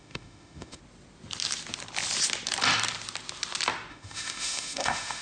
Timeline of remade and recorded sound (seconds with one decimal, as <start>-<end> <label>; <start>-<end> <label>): 0.0-0.8 remade; 0.8-3.9 recorded; 3.9-5.2 remade